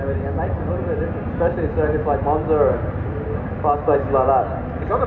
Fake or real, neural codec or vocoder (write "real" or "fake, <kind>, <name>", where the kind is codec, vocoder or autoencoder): real